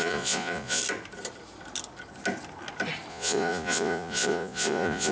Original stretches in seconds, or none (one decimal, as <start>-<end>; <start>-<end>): 0.8-3.1